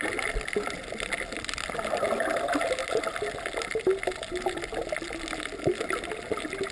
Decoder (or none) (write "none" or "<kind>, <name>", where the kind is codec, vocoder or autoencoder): none